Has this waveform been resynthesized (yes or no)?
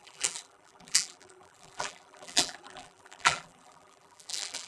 yes